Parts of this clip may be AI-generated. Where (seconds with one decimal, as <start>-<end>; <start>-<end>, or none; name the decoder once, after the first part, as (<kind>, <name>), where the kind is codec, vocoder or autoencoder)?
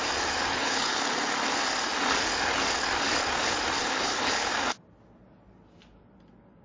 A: 0.5-1.0 (codec, HILCodec); 3.8-4.5